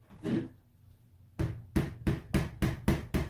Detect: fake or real real